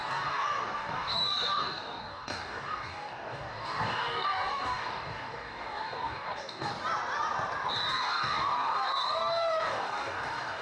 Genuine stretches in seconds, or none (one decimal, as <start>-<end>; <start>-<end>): 6.7-7.7